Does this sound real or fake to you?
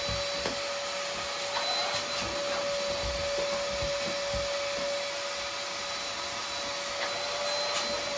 real